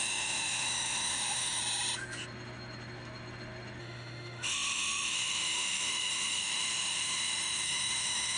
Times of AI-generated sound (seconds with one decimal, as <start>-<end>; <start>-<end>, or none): 0.0-1.6; 3.8-8.4